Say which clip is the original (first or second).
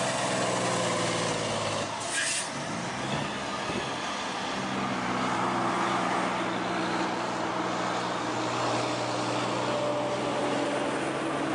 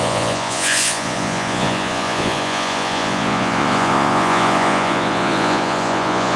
first